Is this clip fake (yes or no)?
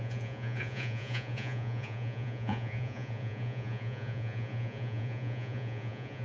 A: yes